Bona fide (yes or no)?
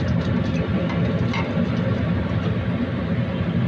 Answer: yes